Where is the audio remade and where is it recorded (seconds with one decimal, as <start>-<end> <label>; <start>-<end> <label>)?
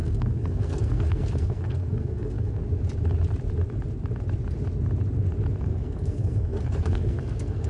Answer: 0.0-2.6 remade; 2.6-5.6 recorded; 5.6-7.7 remade